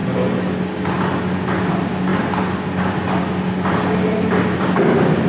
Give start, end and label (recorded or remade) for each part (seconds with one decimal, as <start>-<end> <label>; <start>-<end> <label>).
0.0-5.3 recorded